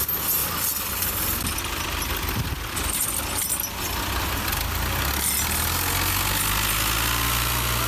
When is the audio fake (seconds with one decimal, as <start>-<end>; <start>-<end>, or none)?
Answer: none